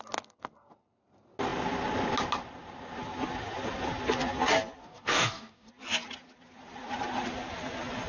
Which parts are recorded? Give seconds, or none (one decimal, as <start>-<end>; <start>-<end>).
0.0-4.8; 5.7-8.1